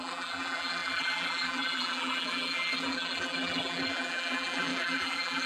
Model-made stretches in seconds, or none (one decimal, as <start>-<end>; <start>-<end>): 0.0-5.5